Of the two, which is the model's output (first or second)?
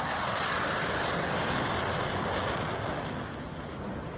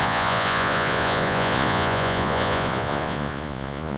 second